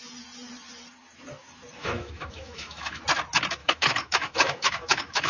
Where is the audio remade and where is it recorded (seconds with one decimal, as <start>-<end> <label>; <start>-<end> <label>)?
0.0-1.8 recorded; 1.8-3.0 remade; 3.0-3.6 recorded; 3.6-5.3 remade